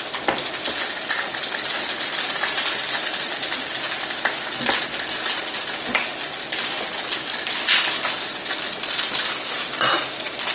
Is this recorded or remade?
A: recorded